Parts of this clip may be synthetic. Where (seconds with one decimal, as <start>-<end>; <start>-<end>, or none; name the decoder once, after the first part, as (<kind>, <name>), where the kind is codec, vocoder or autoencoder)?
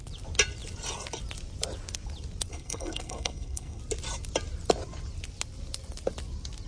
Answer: 2.5-3.8 (codec, SNAC)